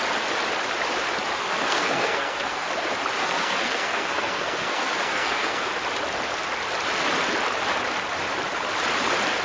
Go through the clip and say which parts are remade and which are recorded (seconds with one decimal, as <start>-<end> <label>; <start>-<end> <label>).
0.0-1.4 recorded; 1.4-2.7 remade; 2.7-3.2 recorded; 3.2-5.7 remade; 5.7-9.4 recorded